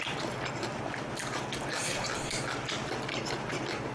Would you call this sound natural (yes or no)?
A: no